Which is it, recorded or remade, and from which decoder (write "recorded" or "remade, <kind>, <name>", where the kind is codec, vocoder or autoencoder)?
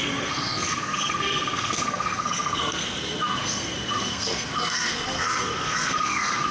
remade, codec, SNAC